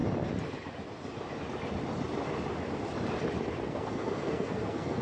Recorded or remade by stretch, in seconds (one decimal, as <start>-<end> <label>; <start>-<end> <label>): 0.0-3.6 recorded; 3.6-5.0 remade